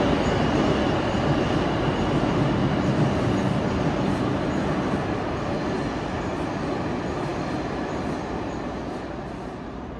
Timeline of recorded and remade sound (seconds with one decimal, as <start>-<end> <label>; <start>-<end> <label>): 0.0-10.0 recorded